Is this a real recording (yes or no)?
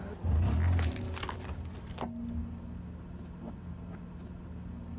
yes